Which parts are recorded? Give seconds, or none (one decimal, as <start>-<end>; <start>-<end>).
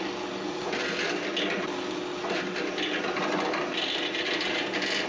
0.0-5.1